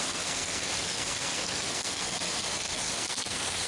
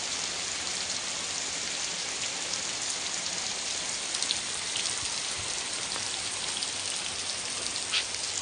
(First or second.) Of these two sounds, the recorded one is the second